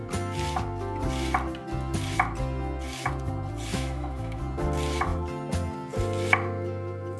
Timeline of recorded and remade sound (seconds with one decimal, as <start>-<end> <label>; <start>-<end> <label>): 0.0-3.7 recorded; 3.7-4.4 remade; 4.4-7.2 recorded